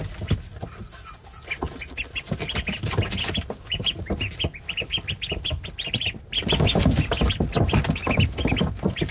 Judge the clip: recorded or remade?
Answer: recorded